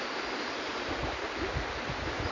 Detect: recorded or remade recorded